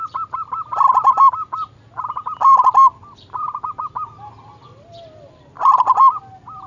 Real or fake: real